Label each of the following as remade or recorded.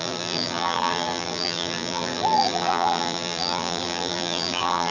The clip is remade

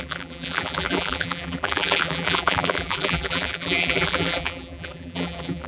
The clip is remade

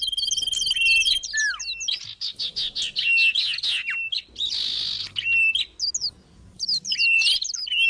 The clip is recorded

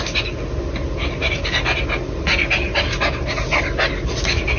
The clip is recorded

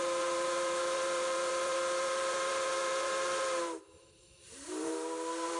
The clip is remade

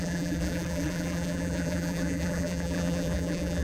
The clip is remade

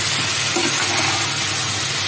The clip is recorded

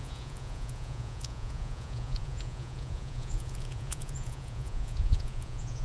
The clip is remade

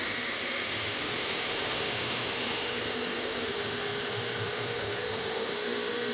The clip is remade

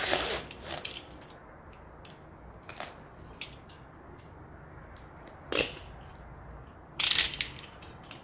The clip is remade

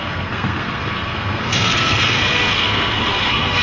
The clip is remade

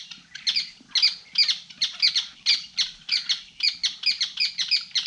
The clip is recorded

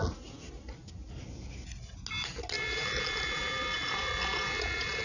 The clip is recorded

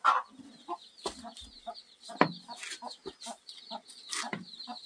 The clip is recorded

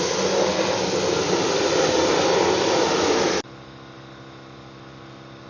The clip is recorded